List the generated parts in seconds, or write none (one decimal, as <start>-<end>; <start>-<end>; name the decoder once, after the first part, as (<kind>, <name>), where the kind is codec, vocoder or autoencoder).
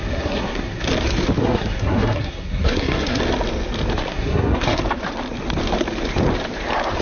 0.0-0.9 (codec, SNAC); 1.4-3.2; 4.1-4.8